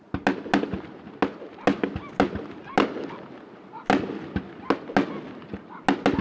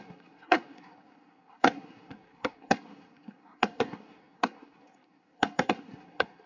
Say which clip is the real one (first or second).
first